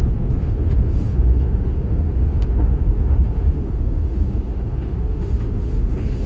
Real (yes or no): no